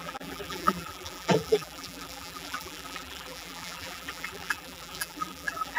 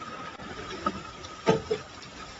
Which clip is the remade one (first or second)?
first